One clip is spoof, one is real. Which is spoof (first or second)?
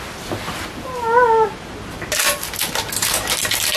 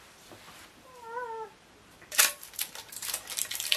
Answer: second